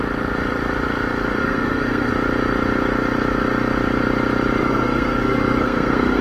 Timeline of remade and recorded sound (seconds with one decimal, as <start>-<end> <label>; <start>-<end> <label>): 0.0-1.4 recorded; 1.4-2.1 remade; 2.1-4.6 recorded; 4.6-6.2 remade